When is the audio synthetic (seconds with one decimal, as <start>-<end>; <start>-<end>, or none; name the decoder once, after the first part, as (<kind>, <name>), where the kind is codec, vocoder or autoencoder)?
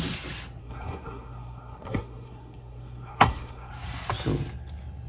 0.6-3.7 (codec, SNAC)